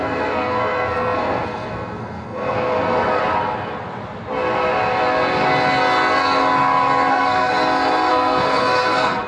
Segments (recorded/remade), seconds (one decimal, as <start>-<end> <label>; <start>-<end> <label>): 0.0-3.2 remade; 3.2-7.1 recorded; 7.1-7.5 remade; 7.5-8.1 recorded; 8.1-9.3 remade